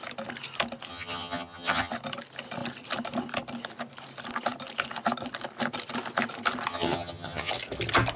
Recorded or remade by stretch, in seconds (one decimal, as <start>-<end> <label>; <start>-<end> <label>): 0.0-0.9 recorded; 0.9-1.9 remade; 1.9-6.7 recorded; 6.7-7.5 remade; 7.5-8.2 recorded

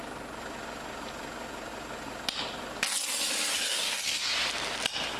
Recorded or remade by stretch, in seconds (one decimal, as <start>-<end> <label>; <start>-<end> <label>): 0.0-3.5 recorded; 3.5-4.3 remade; 4.3-5.2 recorded